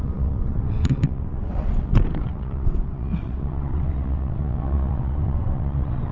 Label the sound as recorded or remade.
remade